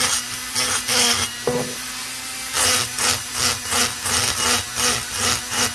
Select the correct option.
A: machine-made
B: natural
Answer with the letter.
B